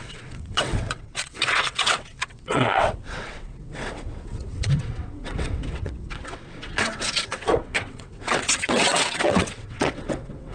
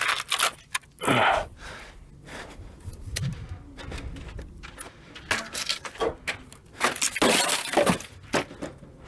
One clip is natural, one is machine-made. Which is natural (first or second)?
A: second